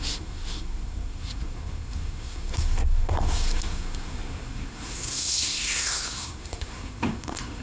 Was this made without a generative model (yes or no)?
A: no